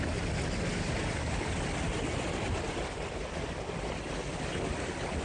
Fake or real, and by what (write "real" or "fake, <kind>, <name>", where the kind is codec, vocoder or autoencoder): real